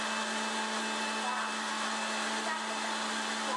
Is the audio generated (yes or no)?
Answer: no